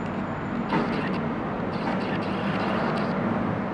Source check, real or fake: real